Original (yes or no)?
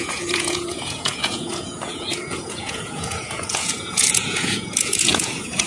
no